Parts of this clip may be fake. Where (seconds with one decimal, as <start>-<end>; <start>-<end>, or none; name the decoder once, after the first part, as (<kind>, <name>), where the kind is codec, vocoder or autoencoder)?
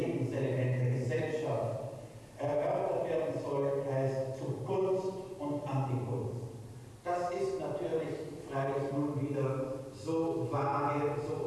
0.0-1.2 (vocoder, BigVGAN v2); 2.5-7.3; 7.9-9.8